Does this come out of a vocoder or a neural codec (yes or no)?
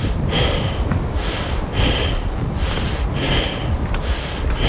no